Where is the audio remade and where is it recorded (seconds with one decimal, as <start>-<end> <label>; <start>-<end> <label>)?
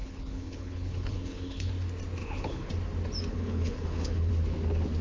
0.0-1.7 remade; 1.7-2.2 recorded; 2.2-2.7 remade; 2.7-3.3 recorded; 3.3-4.3 remade; 4.3-5.0 recorded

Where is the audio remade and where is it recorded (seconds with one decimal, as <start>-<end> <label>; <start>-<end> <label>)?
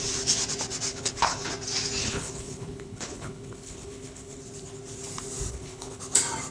0.0-0.9 recorded; 0.9-1.5 remade; 1.5-2.0 recorded; 2.0-4.4 remade; 4.4-5.5 recorded; 5.5-6.0 remade; 6.0-6.5 recorded